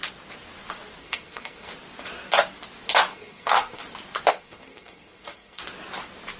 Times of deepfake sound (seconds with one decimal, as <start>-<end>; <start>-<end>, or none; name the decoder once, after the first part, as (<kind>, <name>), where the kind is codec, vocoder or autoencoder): 1.0-1.7 (codec, SNAC); 3.1-3.8; 4.3-5.6